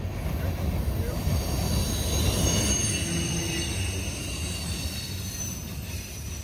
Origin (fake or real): real